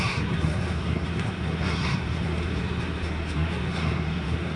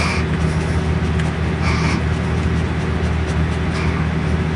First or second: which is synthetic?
first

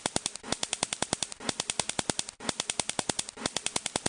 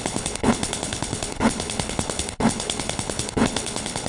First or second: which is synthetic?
second